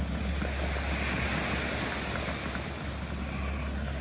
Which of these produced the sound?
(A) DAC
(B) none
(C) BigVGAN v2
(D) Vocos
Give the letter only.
B